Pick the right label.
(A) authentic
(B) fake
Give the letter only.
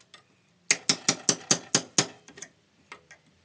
A